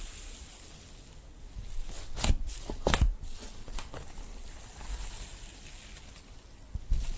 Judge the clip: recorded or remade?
recorded